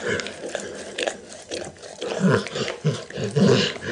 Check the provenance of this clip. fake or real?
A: real